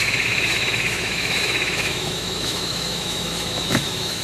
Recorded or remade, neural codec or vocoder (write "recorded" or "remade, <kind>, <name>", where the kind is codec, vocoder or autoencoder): remade, autoencoder, DAC-VAE